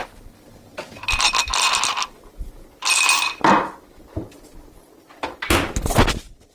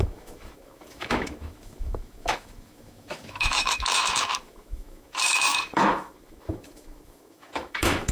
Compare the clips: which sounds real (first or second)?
first